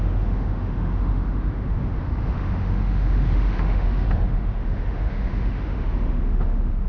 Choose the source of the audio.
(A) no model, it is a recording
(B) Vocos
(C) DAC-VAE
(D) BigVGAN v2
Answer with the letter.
C